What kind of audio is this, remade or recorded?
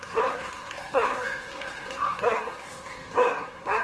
remade